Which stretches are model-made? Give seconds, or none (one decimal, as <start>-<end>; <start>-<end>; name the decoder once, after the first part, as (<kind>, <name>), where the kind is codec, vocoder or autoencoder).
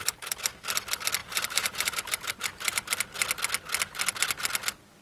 1.2-3.0 (vocoder, BigVGAN v2)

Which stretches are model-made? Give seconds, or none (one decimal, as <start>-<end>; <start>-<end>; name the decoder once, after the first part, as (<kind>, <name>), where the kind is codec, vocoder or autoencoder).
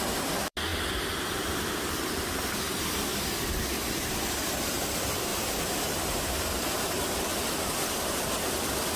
0.0-0.7 (vocoder, BigVGAN v2); 1.2-7.3; 8.6-9.0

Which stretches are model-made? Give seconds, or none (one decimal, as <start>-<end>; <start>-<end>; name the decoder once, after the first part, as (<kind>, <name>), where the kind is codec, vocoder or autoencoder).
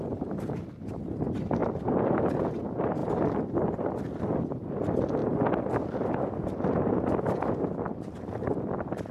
1.6-2.4 (vocoder, BigVGAN v2); 3.0-4.2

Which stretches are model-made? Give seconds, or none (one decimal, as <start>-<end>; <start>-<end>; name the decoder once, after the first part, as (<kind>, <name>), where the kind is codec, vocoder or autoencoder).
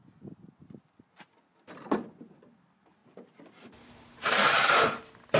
2.2-5.4 (vocoder, BigVGAN v2)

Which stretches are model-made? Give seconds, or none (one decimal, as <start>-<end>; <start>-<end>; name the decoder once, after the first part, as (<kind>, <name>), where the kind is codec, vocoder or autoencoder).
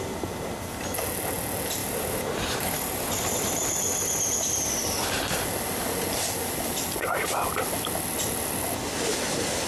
1.8-3.2 (vocoder, BigVGAN v2)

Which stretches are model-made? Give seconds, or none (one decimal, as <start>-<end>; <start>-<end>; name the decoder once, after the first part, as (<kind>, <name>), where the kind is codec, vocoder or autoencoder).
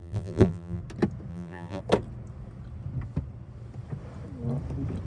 0.0-0.8 (vocoder, BigVGAN v2); 1.3-1.8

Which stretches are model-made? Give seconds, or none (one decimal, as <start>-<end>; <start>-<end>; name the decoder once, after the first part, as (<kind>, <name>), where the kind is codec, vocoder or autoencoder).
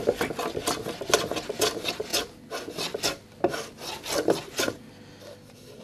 none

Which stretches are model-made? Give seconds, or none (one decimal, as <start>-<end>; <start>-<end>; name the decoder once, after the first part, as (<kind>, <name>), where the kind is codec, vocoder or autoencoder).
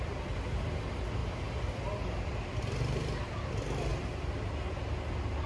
0.0-1.2 (vocoder, BigVGAN v2); 2.1-3.9; 5.1-5.5